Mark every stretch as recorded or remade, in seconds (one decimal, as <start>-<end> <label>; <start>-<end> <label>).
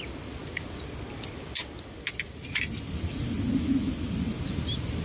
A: 0.0-5.0 recorded